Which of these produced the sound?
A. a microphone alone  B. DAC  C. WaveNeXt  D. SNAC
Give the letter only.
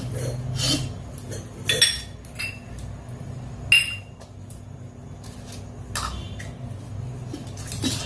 A